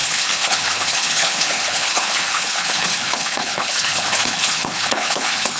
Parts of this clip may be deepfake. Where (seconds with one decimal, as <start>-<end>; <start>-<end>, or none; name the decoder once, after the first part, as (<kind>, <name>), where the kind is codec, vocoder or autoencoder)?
0.0-5.6 (codec, HILCodec)